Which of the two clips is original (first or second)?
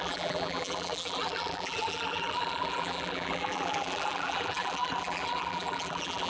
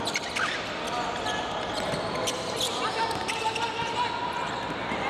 second